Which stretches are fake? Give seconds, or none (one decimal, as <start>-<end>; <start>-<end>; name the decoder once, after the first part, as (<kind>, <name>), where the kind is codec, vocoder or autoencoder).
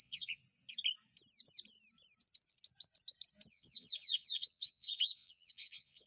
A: 0.0-0.4 (vocoder, Vocos); 3.5-6.1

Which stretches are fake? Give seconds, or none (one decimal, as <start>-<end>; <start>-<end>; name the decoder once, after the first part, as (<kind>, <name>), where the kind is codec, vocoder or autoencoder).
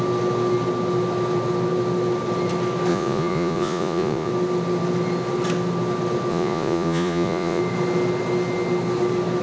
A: 2.9-4.3 (vocoder, Vocos); 6.3-7.6